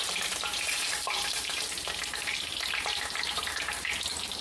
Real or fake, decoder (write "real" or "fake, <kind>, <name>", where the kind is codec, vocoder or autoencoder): fake, vocoder, BigVGAN v2